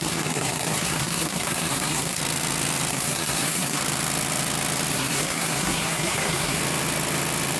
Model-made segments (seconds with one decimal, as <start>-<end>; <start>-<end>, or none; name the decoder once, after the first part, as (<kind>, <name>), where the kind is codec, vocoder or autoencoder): 0.0-2.2 (codec, SNAC); 2.9-3.8; 4.9-6.6